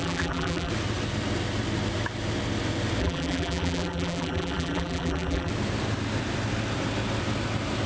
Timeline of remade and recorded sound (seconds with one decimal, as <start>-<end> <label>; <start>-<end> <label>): 0.0-0.7 remade; 0.7-3.0 recorded; 3.0-5.5 remade; 5.5-7.9 recorded